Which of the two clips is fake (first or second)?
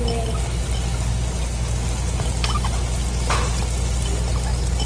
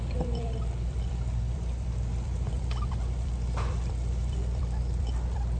second